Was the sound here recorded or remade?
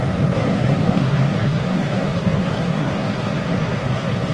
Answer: remade